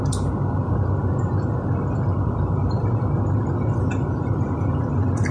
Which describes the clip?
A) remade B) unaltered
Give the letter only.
B